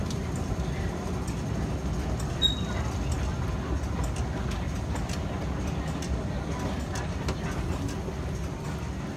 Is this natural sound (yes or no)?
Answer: yes